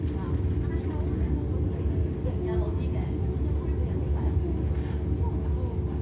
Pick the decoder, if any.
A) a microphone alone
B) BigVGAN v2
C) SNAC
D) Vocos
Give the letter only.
A